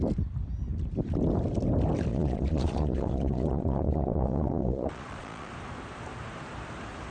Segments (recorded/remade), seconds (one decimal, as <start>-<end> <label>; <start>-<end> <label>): 0.0-2.1 recorded; 2.1-5.5 remade; 5.5-7.1 recorded